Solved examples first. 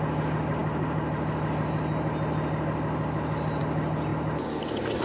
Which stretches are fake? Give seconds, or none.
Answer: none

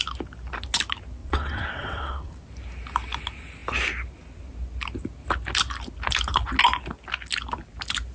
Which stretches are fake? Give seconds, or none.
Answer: 1.2-2.3 (vocoder, WaveNeXt)

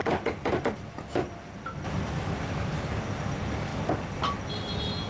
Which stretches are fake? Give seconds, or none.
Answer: 0.0-3.0 (vocoder, BigVGAN v2)

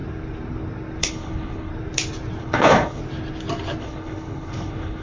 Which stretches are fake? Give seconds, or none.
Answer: 1.0-1.7 (codec, HILCodec); 2.4-3.0; 3.8-5.0

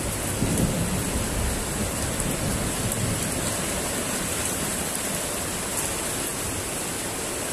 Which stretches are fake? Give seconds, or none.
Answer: none

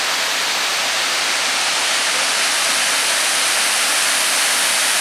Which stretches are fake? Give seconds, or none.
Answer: none

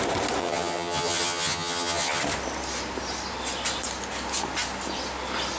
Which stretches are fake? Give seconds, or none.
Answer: 0.4-2.2 (vocoder, HiFi-GAN)

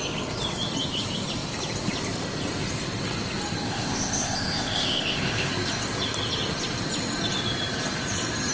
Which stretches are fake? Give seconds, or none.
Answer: 3.6-5.5 (codec, ZipCodec)